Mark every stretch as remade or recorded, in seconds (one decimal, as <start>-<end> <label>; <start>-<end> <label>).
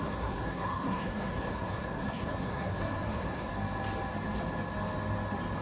0.0-3.5 remade; 3.5-5.6 recorded